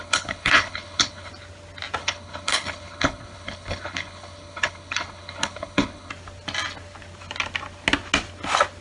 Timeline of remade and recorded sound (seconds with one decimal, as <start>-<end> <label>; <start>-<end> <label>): 0.0-1.3 remade; 1.3-2.0 recorded; 2.0-6.1 remade; 6.1-8.8 recorded